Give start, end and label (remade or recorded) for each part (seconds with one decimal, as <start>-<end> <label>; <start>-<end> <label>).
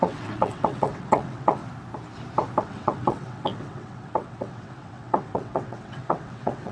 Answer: 0.0-1.6 remade; 1.6-2.6 recorded; 2.6-6.7 remade